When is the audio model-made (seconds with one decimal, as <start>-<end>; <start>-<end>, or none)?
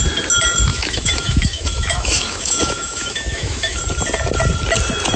0.7-3.8